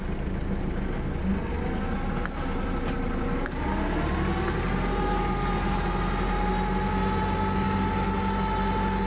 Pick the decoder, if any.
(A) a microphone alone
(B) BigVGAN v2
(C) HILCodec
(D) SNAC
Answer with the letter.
A